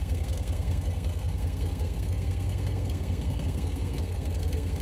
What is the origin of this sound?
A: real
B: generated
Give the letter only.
B